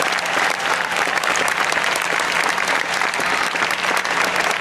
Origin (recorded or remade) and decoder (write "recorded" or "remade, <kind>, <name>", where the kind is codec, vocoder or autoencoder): remade, vocoder, BigVGAN v2